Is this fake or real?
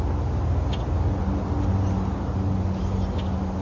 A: real